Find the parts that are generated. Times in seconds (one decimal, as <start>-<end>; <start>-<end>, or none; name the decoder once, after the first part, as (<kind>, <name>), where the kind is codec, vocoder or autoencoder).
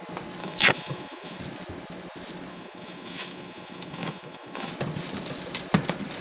0.4-1.4 (autoencoder, DAC-VAE); 2.5-4.7